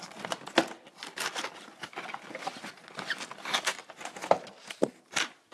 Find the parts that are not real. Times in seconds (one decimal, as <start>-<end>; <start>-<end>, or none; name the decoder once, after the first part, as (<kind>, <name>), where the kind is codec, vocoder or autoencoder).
none